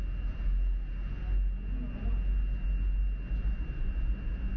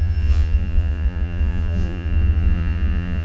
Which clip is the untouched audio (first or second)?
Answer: first